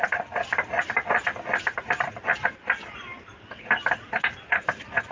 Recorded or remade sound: recorded